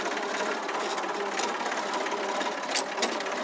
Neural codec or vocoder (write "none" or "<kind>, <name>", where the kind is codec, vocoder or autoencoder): none